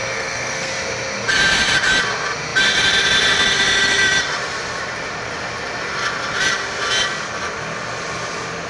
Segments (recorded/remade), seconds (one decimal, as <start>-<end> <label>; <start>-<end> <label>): 0.0-0.7 remade; 0.7-8.7 recorded